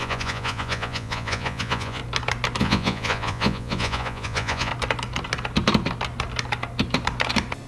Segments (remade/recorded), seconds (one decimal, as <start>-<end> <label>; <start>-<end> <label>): 0.0-2.0 remade; 2.0-2.6 recorded; 2.6-4.7 remade; 4.7-7.7 recorded